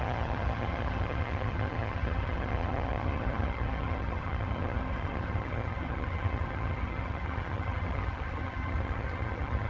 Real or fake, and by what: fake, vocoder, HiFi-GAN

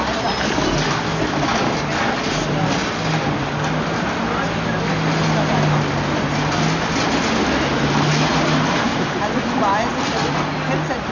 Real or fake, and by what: real